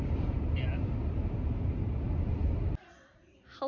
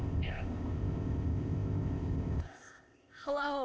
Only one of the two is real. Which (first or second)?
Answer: first